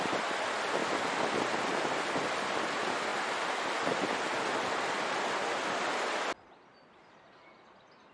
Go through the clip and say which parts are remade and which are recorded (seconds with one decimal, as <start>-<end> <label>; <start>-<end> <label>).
0.0-8.1 recorded